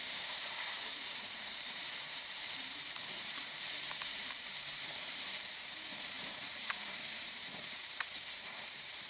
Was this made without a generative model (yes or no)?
no